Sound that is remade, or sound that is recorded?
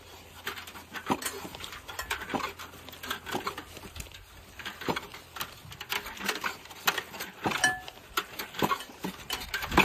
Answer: recorded